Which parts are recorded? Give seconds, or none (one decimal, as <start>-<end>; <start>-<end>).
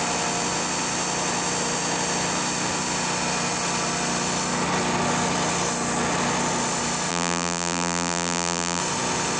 0.0-7.1; 8.8-9.4